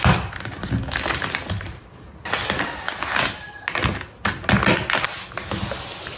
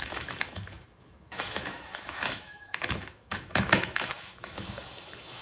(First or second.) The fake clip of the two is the second